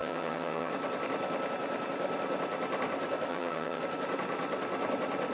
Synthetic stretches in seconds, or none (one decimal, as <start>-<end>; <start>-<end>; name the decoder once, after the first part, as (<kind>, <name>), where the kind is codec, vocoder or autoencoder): 0.0-0.7 (vocoder, HiFi-GAN); 3.3-3.8